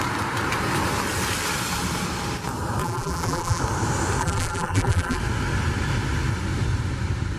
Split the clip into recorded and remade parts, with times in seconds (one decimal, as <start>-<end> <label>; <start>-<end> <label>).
0.0-2.8 recorded; 2.8-3.6 remade; 3.6-4.2 recorded; 4.2-5.2 remade; 5.2-7.4 recorded